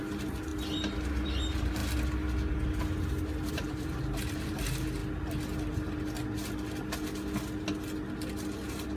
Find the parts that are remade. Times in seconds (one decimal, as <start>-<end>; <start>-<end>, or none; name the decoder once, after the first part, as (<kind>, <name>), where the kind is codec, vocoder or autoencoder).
0.0-0.5 (vocoder, BigVGAN v2); 1.0-1.8; 3.5-5.0